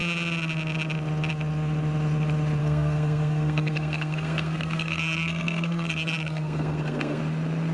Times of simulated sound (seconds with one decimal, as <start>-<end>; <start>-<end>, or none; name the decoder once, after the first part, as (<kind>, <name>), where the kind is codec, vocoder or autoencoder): 2.6-7.2 (codec, SNAC)